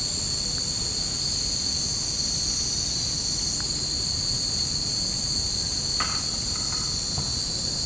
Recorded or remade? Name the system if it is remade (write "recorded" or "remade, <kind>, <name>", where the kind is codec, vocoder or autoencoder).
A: recorded